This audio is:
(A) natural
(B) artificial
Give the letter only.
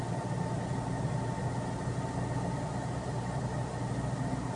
A